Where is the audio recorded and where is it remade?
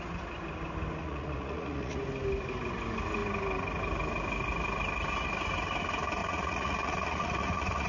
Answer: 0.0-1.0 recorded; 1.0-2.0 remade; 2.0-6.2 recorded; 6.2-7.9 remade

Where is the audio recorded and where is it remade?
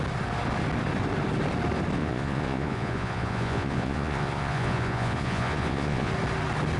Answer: 0.0-2.0 recorded; 2.0-6.1 remade; 6.1-6.8 recorded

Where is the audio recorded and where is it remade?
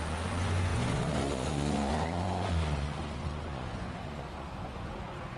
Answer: 0.0-5.4 remade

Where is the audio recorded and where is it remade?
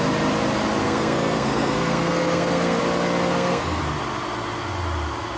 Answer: 0.0-0.8 recorded; 0.8-2.8 remade; 2.8-3.3 recorded; 3.3-3.8 remade; 3.8-5.4 recorded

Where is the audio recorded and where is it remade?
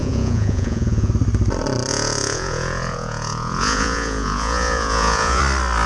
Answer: 0.0-1.1 remade; 1.1-1.9 recorded; 1.9-5.4 remade; 5.4-5.9 recorded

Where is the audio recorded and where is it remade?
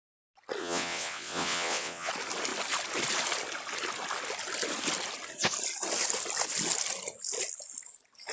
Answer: 0.0-0.6 recorded; 0.6-2.1 remade; 2.1-8.3 recorded